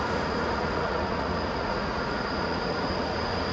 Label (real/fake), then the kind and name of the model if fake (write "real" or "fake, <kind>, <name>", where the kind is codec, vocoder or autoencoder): fake, vocoder, Vocos